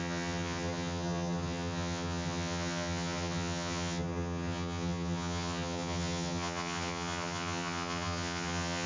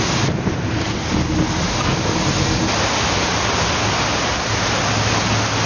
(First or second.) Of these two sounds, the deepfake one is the first